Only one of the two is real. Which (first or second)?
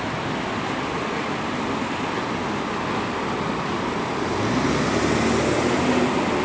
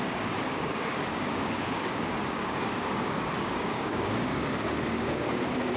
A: first